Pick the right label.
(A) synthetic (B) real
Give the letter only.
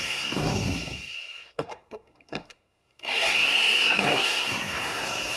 A